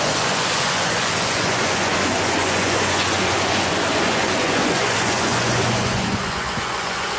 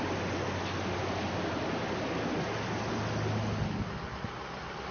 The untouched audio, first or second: second